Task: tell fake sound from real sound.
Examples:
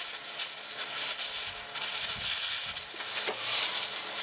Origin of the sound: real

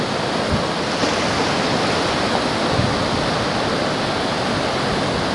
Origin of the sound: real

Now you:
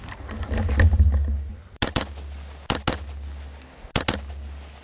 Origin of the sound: real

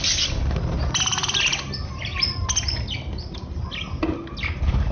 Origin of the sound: real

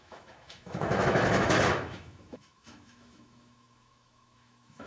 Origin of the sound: fake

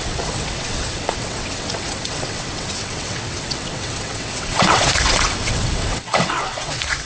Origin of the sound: fake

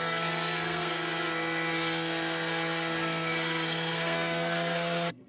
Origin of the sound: fake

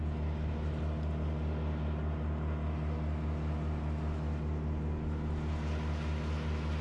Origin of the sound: real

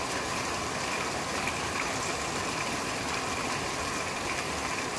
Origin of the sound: fake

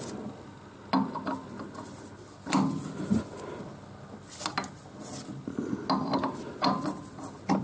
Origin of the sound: real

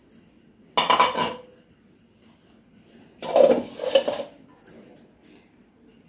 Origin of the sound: real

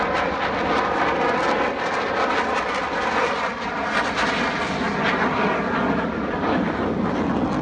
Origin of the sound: real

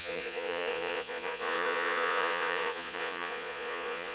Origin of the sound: fake